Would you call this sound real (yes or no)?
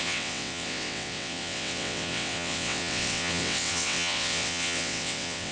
no